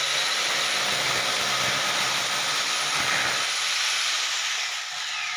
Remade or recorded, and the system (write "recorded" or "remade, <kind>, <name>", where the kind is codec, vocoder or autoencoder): recorded